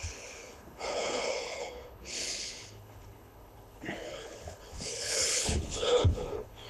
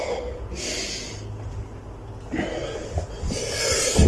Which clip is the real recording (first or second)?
second